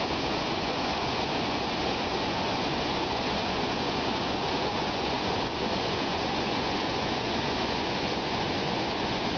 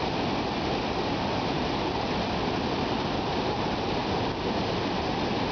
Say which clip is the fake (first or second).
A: first